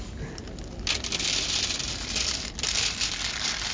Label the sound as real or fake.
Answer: real